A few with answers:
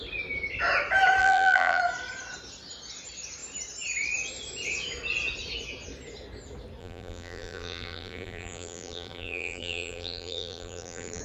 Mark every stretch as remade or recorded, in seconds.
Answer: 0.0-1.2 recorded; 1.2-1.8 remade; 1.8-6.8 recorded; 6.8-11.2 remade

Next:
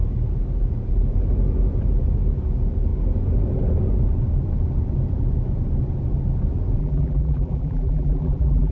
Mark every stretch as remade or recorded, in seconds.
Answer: 0.0-6.8 recorded; 6.8-8.7 remade